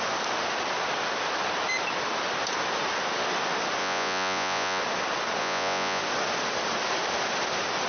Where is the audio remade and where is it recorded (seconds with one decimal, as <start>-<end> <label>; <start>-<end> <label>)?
0.0-3.8 recorded; 3.8-4.8 remade; 4.8-5.4 recorded; 5.4-6.0 remade; 6.0-7.9 recorded